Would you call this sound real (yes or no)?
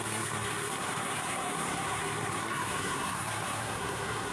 no